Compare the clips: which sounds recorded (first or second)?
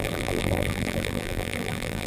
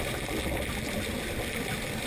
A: second